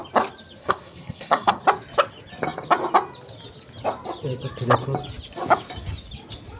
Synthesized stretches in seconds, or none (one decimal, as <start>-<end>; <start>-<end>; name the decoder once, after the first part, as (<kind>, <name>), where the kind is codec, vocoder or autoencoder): 0.6-1.6 (codec, SNAC)